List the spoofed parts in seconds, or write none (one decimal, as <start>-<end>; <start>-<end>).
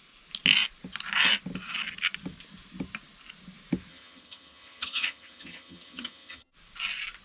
3.9-6.5